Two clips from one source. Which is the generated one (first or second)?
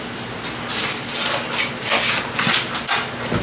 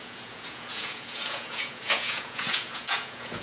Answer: second